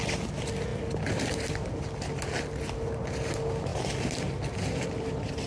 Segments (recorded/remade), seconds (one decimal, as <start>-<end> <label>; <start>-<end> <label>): 0.0-5.5 recorded